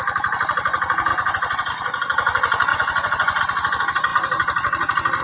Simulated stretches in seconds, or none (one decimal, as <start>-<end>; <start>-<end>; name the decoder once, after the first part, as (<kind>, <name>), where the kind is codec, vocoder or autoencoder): 1.1-1.7 (vocoder, Vocos); 2.7-3.4